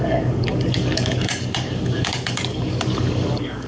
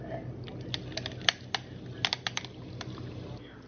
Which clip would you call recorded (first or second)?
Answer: second